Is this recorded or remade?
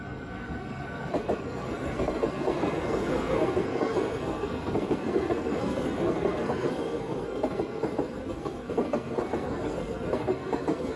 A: remade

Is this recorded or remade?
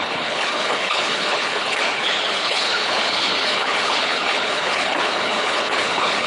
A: remade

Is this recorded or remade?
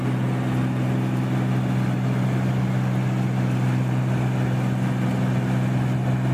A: recorded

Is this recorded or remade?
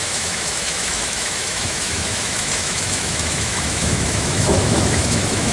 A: remade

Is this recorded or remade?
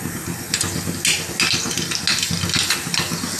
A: recorded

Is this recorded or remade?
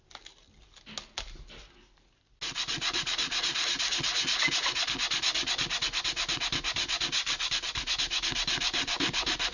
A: recorded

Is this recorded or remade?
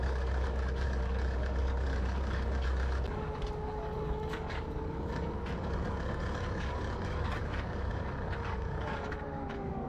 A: remade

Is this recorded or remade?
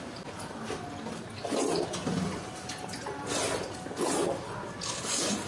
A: recorded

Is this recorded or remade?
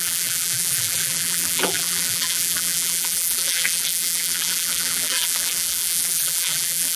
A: remade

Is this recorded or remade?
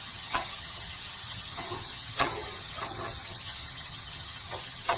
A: remade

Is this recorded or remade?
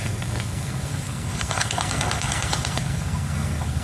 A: remade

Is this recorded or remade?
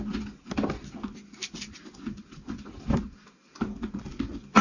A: recorded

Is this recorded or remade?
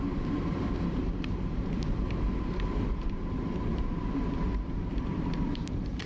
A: remade